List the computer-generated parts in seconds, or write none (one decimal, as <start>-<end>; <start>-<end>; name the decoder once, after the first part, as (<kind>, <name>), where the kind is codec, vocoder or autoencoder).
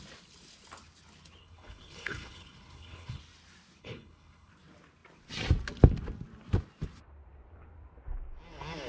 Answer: 1.4-3.2 (codec, HILCodec); 3.8-4.5